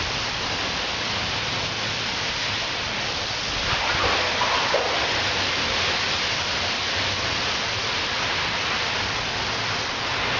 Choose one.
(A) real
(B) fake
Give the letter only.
A